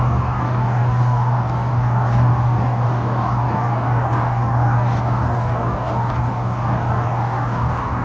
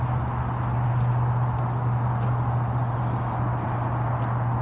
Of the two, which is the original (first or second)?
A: second